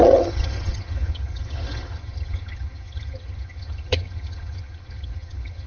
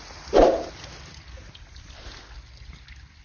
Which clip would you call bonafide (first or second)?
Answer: second